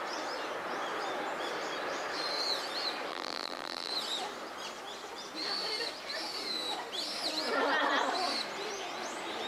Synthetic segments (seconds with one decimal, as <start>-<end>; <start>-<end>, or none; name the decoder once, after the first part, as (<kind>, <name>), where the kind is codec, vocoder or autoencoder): 3.1-3.9 (vocoder, BigVGAN v2)